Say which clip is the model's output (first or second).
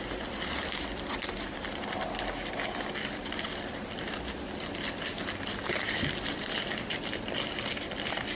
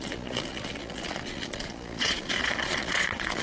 second